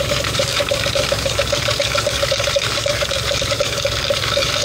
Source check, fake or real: fake